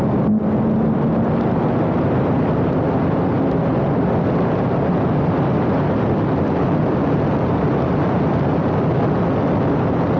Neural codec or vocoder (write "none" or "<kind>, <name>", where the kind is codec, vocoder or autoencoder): none